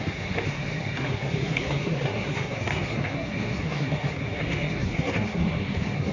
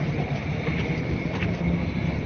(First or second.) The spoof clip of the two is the first